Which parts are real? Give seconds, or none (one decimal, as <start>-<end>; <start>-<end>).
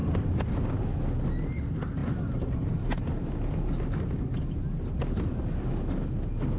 0.5-6.6